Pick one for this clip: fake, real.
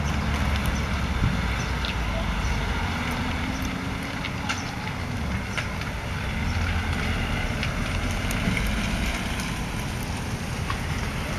real